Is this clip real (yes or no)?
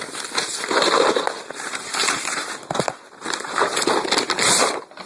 yes